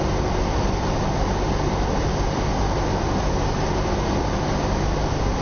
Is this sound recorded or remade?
recorded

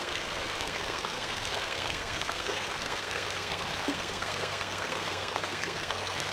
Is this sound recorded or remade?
remade